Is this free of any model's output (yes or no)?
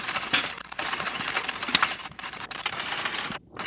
no